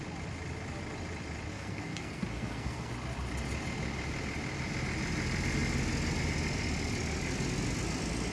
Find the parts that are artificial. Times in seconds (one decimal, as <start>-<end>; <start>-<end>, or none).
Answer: 1.5-2.9